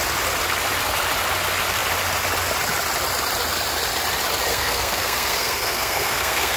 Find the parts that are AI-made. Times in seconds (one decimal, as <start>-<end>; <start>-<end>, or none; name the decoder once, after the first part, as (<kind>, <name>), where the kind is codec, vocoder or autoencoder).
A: 4.5-6.6 (codec, SNAC)